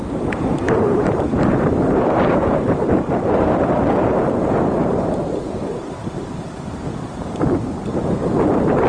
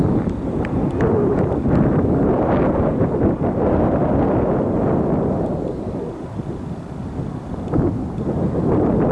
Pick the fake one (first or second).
first